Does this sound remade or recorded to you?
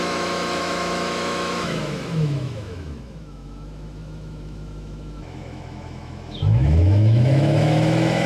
remade